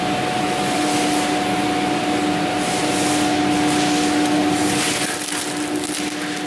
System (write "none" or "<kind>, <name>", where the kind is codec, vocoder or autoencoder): none